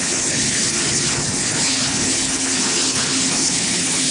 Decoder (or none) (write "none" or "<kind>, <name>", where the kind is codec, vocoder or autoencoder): codec, HILCodec